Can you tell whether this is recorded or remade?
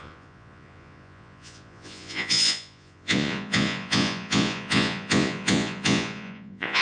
remade